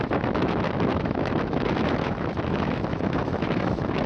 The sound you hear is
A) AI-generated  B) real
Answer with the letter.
A